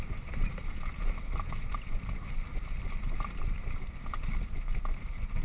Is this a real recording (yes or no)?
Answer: yes